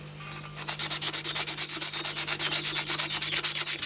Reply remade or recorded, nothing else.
recorded